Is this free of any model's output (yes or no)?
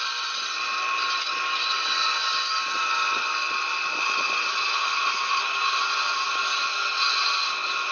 yes